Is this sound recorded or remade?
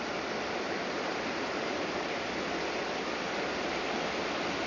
recorded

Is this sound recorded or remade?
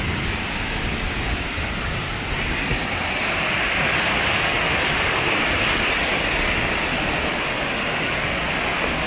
recorded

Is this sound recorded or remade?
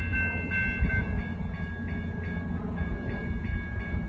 recorded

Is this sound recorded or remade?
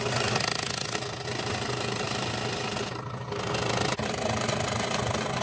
recorded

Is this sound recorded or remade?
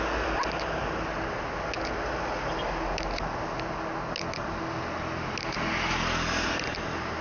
recorded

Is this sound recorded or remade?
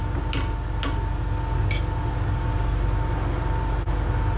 recorded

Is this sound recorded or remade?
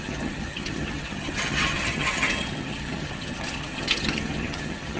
remade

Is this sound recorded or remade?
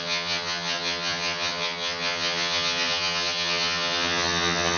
remade